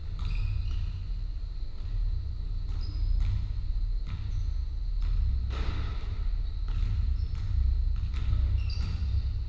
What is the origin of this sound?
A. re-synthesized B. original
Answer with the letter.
B